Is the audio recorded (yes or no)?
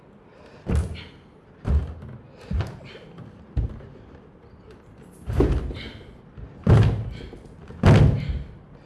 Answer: yes